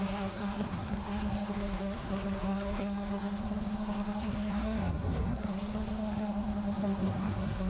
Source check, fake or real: fake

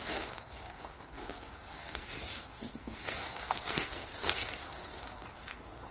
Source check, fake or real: fake